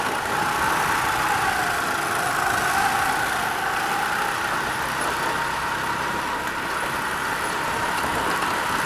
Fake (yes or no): no